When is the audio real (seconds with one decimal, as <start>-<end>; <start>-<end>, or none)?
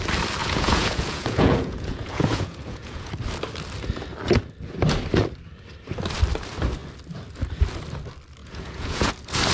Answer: 0.0-0.4; 3.1-8.4; 9.1-9.5